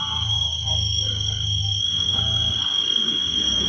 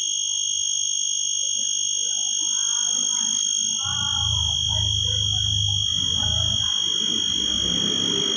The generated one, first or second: first